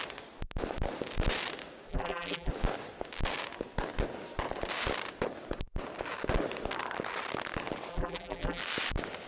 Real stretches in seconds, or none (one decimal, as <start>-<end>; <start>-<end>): 0.0-1.9; 2.5-7.9; 8.6-9.3